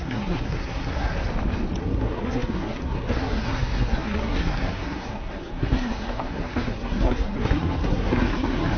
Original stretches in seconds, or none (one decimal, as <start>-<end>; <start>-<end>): 1.1-1.8